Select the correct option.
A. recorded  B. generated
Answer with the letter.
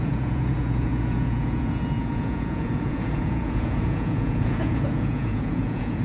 B